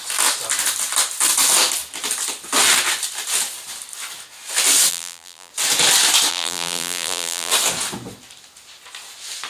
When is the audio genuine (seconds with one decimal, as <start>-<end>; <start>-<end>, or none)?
0.0-4.9; 5.5-6.3; 7.5-9.5